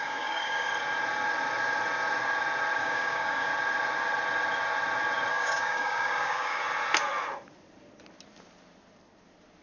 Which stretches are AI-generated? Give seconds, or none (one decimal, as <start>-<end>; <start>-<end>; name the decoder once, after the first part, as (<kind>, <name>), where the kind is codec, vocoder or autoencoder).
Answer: 0.0-0.7 (codec, DAC); 2.8-3.5; 5.3-6.6